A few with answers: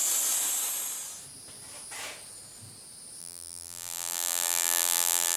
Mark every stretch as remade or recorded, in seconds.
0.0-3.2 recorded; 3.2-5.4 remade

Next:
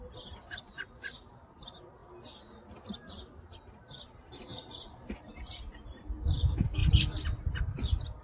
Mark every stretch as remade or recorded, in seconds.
0.0-2.0 remade; 2.0-3.1 recorded; 3.1-6.8 remade; 6.8-7.4 recorded; 7.4-8.2 remade

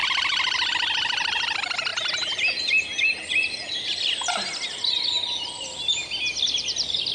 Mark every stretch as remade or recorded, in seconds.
0.0-7.1 recorded

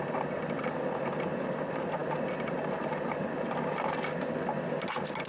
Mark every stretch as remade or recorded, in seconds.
0.0-2.0 remade; 2.0-5.3 recorded